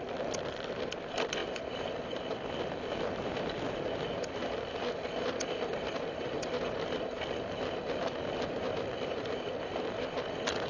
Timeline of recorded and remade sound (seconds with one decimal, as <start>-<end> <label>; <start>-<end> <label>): 0.0-10.7 recorded